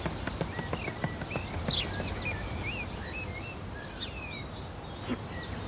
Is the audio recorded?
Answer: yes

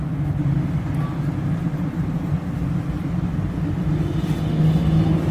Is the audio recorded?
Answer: yes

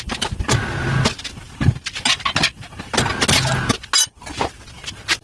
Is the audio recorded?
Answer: yes